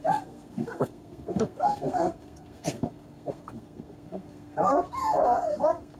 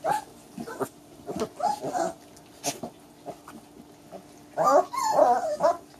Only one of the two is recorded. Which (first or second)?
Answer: second